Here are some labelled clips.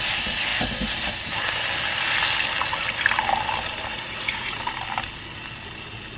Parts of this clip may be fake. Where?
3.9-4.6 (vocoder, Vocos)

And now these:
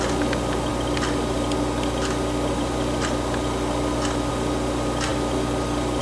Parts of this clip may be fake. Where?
none

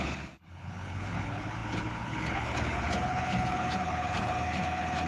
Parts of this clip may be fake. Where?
0.0-5.1 (codec, HILCodec)

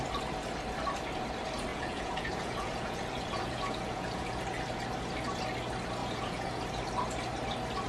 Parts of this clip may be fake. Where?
1.7-4.4 (vocoder, Vocos); 6.0-6.6

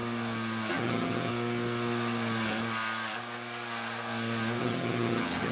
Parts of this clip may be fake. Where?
0.7-1.3 (vocoder, HiFi-GAN); 4.6-5.5

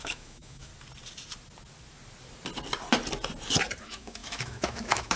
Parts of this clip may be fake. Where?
0.0-0.7 (autoencoder, DAC-VAE); 3.8-5.2